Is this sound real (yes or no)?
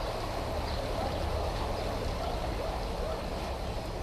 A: yes